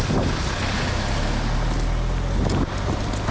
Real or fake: real